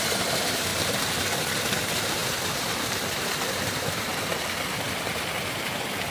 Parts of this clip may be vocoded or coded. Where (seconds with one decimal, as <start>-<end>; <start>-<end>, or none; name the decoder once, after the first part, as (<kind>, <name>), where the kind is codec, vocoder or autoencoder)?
0.0-0.7 (vocoder, BigVGAN v2); 1.7-4.1; 4.7-6.1